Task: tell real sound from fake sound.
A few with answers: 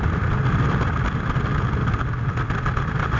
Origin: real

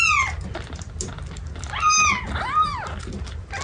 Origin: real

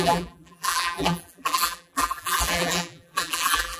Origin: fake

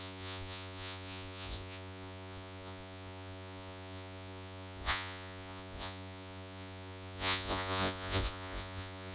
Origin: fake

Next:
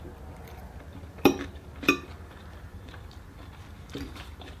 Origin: fake